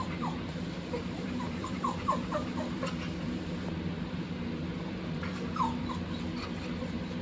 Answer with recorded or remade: remade